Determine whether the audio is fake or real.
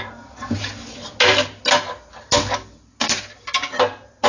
real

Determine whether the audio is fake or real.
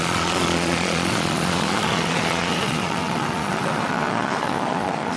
fake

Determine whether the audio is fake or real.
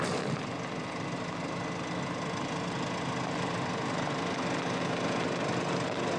real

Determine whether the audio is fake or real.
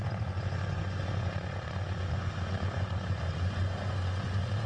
fake